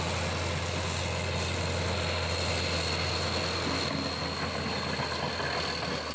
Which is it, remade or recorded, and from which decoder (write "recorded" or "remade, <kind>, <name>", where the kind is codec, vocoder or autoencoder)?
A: recorded